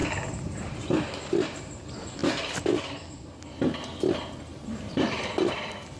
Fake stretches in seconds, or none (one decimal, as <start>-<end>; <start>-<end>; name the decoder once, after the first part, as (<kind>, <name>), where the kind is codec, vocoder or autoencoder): 0.0-1.8 (vocoder, BigVGAN v2); 4.5-5.3